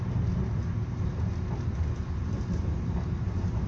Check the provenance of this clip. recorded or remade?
remade